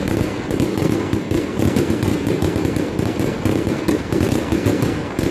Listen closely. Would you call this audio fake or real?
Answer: fake